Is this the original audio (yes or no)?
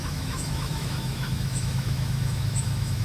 no